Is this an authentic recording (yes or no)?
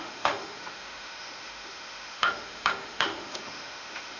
no